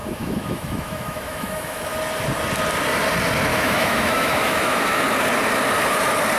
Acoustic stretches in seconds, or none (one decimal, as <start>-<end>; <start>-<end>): 1.9-3.5; 5.0-6.4